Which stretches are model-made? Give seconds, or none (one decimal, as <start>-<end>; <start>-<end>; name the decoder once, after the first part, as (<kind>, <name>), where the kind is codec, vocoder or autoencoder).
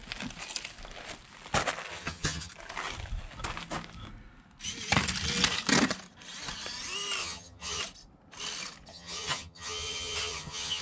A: 1.9-2.5 (vocoder, HiFi-GAN); 7.2-7.8; 8.9-10.8